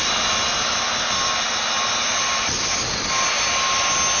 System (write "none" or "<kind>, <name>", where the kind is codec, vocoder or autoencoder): none